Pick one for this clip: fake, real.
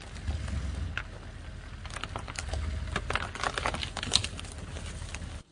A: real